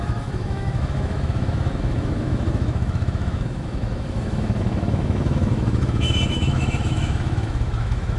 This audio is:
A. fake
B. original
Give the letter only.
A